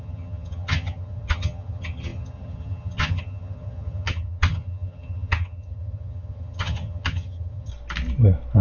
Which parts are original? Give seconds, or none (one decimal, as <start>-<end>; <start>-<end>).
7.7-8.6